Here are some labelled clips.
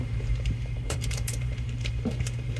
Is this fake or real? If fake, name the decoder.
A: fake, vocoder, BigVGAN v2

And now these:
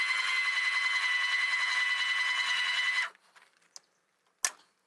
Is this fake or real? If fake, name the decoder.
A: real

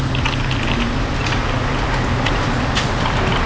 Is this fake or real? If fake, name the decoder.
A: real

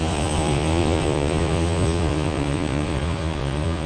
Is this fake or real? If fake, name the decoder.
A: fake, vocoder, Vocos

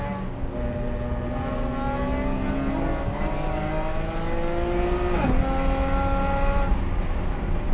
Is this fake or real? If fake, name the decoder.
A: real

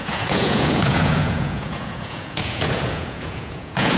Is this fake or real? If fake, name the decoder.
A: fake, vocoder, Vocos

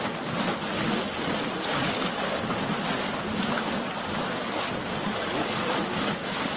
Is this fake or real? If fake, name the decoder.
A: real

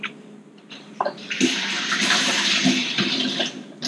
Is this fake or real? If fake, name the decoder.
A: fake, vocoder, BigVGAN v2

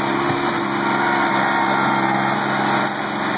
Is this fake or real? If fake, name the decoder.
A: real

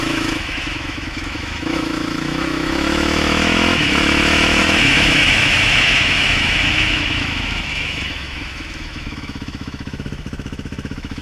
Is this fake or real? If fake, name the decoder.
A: fake, autoencoder, DAC-VAE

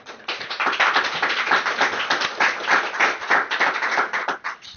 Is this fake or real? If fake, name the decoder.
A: real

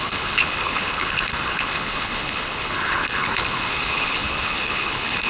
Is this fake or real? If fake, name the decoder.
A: fake, codec, HILCodec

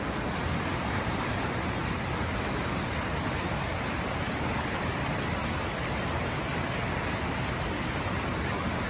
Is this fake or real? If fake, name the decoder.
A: real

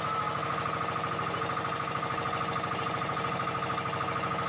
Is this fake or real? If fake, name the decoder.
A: real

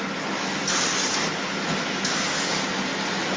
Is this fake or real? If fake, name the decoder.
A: real